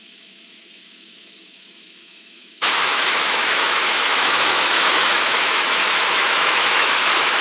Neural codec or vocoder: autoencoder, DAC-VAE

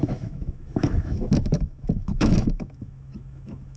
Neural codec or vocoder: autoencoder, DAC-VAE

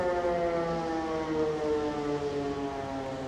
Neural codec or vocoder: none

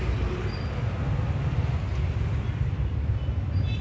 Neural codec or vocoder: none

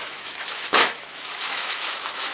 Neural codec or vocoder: autoencoder, DAC-VAE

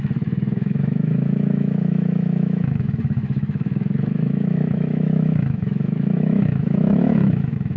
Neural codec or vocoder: autoencoder, DAC-VAE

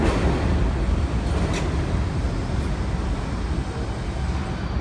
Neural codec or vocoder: none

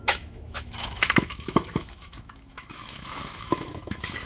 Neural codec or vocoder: autoencoder, DAC-VAE